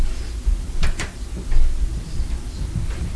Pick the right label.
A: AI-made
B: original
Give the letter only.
B